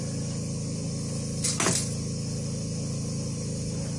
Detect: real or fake real